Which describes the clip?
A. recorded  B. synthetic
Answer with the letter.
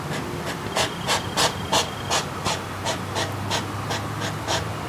A